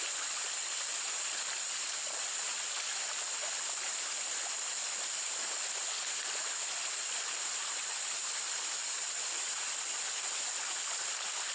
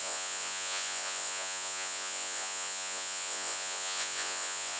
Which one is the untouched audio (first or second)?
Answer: first